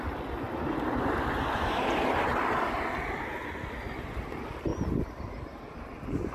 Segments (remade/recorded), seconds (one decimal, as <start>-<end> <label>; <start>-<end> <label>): 0.0-6.3 recorded